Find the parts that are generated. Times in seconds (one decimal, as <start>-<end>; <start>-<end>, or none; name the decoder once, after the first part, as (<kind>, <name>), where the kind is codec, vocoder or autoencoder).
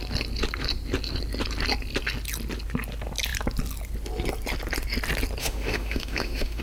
5.4-6.6 (autoencoder, DAC-VAE)